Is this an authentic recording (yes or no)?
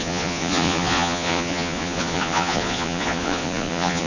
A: no